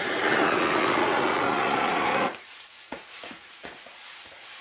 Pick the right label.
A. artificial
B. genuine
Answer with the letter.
A